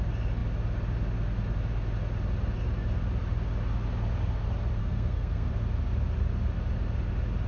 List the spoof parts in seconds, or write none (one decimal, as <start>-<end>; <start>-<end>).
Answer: 4.8-5.5

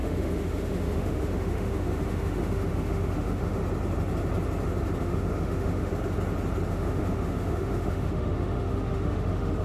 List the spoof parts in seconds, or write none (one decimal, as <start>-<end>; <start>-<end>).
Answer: 0.0-3.6; 5.0-5.9; 6.7-9.6

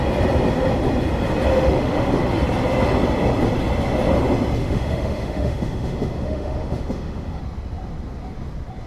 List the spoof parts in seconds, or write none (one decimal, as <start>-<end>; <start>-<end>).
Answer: 1.5-2.1; 4.6-7.4

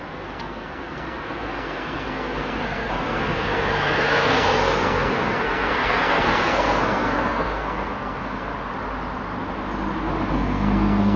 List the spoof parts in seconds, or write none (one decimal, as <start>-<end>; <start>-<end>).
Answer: 0.0-8.5; 10.3-11.2